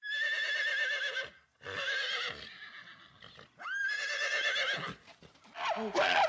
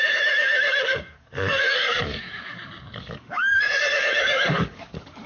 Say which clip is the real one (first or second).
first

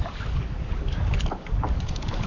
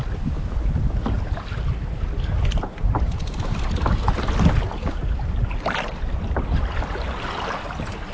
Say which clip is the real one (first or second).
second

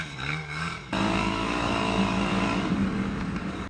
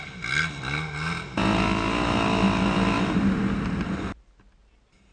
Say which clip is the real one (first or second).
second